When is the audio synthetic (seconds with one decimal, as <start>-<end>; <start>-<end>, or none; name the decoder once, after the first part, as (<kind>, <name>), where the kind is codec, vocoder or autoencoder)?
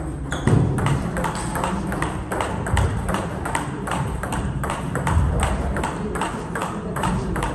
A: 2.9-5.3 (vocoder, BigVGAN v2); 6.6-7.5